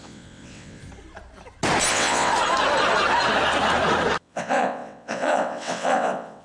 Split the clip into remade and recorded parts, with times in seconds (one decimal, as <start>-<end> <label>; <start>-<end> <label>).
0.0-0.8 remade; 0.8-1.9 recorded; 1.9-2.3 remade; 2.3-4.2 recorded; 4.2-6.4 remade